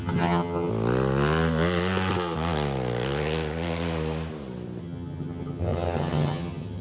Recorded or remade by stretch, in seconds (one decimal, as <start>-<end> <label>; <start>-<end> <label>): 0.0-0.7 remade; 0.7-4.8 recorded; 4.8-6.8 remade